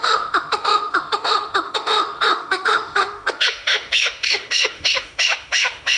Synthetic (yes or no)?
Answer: yes